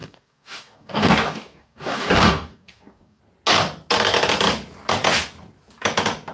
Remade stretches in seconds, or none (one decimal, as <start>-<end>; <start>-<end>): 0.0-3.2